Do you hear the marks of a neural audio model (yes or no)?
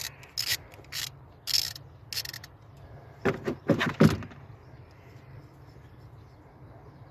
no